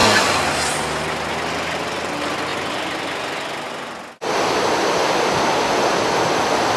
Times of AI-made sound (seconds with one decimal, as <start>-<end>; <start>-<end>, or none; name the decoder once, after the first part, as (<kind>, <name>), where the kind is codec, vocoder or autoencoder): none